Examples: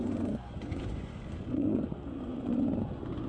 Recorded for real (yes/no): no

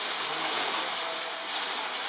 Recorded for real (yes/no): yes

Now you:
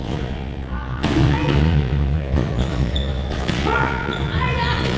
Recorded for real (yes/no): no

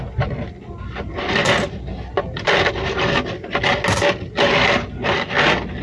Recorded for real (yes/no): yes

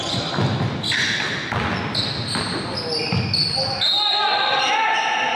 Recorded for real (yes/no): yes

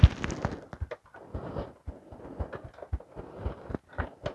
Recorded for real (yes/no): yes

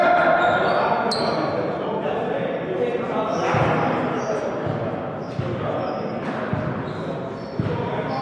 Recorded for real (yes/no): yes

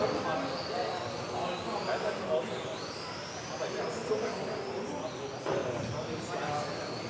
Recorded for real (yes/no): yes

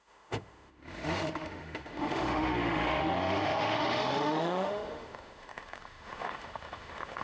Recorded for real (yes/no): no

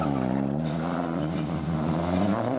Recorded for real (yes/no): yes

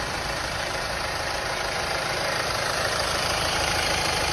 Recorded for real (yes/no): no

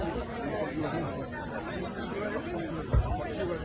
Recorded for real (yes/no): yes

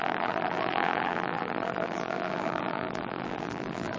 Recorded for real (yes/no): no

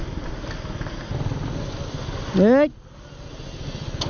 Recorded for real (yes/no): yes